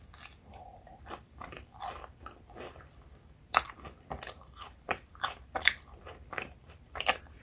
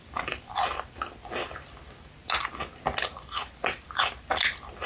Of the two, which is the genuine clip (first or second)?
second